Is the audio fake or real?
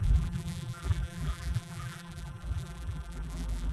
fake